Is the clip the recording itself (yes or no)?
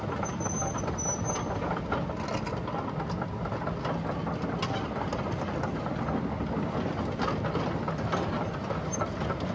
yes